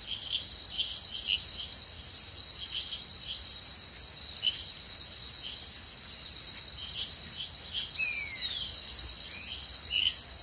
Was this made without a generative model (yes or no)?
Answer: yes